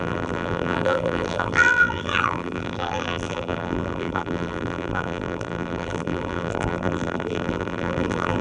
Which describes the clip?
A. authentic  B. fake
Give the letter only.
B